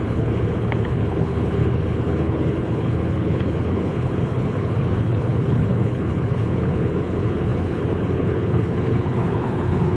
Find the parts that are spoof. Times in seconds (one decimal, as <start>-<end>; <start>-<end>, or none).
0.0-10.0